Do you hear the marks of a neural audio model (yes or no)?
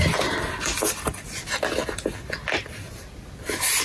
no